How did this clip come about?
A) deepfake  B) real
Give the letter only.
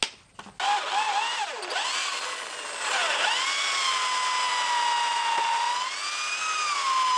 B